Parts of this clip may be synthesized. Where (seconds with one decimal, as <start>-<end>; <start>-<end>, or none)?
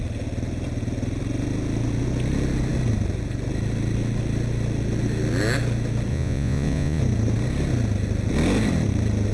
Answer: 6.1-7.0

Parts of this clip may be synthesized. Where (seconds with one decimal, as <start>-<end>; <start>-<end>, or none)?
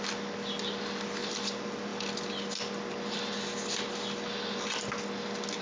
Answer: none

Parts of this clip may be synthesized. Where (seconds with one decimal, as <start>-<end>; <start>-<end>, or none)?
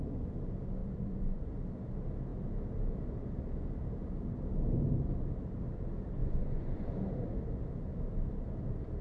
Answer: 0.8-1.5; 6.2-6.9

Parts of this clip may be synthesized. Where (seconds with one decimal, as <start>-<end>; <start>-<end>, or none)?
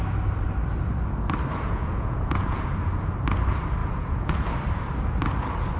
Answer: 1.5-2.7; 3.8-4.3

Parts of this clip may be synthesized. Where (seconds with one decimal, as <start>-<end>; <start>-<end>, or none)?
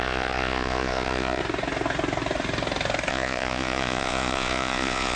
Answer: 0.0-1.4; 3.1-5.2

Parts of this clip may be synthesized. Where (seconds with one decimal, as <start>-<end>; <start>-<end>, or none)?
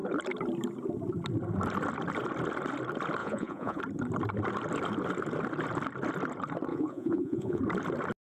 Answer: 3.2-3.8; 6.7-7.6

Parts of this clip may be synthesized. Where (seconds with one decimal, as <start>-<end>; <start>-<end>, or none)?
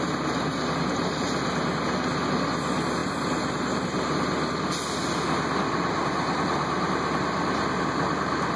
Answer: none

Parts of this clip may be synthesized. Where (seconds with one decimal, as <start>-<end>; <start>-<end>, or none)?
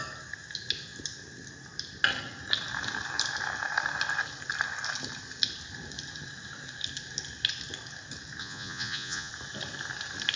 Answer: 8.4-9.3